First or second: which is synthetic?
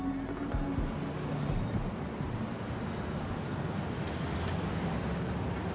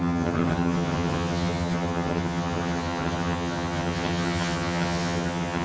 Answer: second